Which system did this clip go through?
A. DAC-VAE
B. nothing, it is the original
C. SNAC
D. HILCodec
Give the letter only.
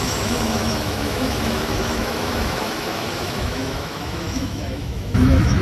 A